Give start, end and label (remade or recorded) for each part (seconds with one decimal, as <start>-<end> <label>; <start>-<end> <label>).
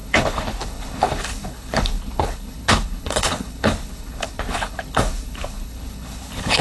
0.0-6.6 remade